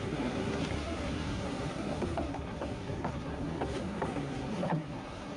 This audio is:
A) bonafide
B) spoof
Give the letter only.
B